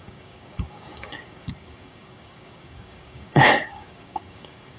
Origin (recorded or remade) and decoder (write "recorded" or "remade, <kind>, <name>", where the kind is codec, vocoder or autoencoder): remade, codec, DAC